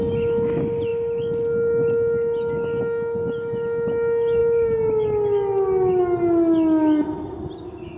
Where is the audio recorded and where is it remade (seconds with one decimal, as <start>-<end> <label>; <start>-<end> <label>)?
0.0-8.0 recorded